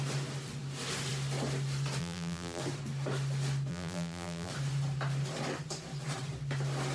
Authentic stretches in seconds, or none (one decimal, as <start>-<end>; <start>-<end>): 0.0-2.0; 2.6-3.7; 4.5-6.9